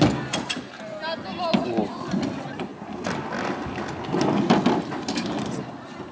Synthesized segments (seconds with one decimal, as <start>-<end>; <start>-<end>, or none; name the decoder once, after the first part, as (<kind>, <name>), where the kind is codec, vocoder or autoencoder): none